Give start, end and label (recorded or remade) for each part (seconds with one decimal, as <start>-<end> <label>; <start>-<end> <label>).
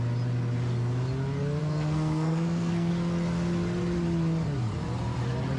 0.0-1.6 recorded; 1.6-2.9 remade; 2.9-5.6 recorded